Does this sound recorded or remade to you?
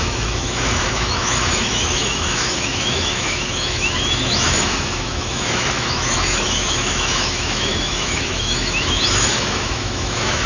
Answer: remade